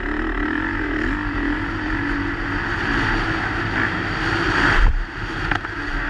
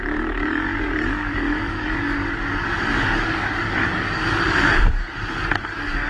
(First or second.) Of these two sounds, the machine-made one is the second